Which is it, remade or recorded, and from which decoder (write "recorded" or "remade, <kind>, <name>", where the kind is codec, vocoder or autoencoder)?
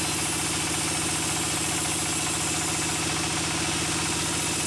recorded